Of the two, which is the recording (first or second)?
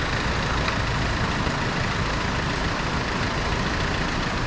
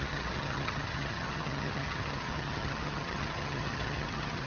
first